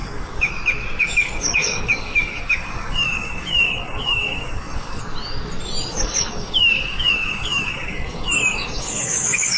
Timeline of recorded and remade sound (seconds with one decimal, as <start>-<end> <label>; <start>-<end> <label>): 0.0-0.5 remade; 0.5-1.0 recorded; 1.0-5.0 remade; 5.0-5.9 recorded; 5.9-9.6 remade